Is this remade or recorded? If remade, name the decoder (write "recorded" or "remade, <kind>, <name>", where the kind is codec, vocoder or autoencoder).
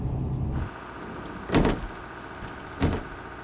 recorded